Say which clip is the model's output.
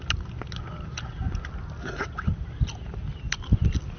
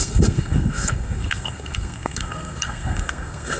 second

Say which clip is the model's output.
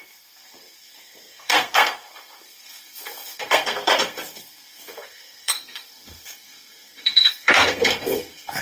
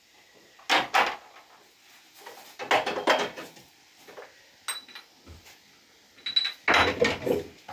first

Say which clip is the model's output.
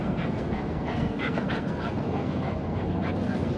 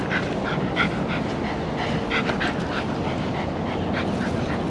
first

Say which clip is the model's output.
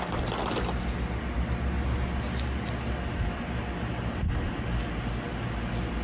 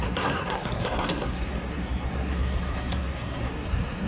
second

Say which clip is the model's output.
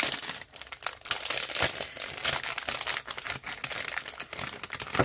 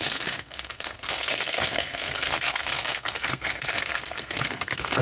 second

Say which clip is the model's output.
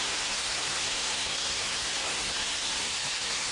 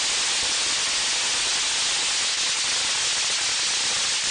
first